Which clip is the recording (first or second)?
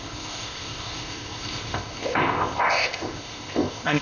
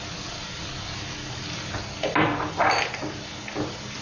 second